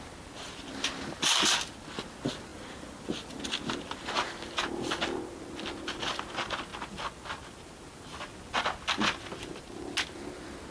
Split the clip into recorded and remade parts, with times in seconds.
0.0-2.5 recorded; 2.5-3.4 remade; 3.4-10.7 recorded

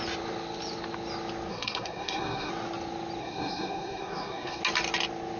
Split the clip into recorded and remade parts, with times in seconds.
0.0-1.5 recorded; 1.5-2.5 remade; 2.5-3.2 recorded; 3.2-4.6 remade; 4.6-5.4 recorded